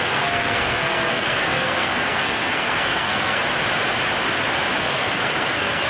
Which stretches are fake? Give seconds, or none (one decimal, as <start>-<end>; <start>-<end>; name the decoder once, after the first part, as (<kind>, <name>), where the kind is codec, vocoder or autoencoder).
0.0-3.4 (codec, SNAC); 4.8-5.9

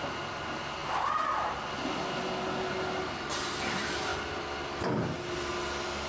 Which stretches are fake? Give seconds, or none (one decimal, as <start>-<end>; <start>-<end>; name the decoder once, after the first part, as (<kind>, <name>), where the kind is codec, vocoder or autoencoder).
none

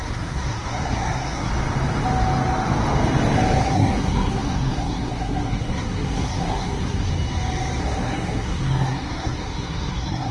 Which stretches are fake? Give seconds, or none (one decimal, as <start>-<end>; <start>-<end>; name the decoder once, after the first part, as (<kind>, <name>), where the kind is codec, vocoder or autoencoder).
0.0-1.5 (codec, SNAC); 3.6-7.1; 7.8-10.3

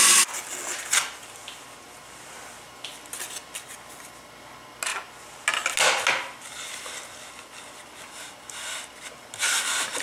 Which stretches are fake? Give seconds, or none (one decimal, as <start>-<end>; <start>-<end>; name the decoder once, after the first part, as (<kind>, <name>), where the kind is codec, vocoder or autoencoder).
none

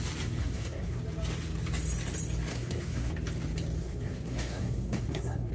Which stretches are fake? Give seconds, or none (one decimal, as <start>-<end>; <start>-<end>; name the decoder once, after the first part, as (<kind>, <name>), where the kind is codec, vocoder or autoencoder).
0.4-1.0 (codec, SNAC); 2.5-3.1; 3.8-5.5

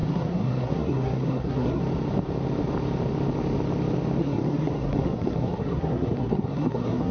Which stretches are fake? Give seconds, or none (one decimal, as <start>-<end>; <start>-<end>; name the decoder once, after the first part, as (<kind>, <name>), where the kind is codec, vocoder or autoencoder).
0.0-1.8 (codec, SNAC); 4.2-7.1